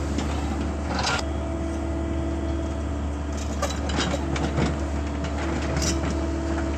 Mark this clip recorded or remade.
recorded